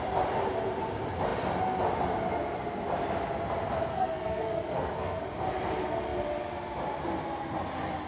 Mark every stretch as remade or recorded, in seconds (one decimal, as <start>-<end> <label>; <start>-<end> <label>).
0.0-3.9 recorded; 3.9-5.2 remade; 5.2-8.1 recorded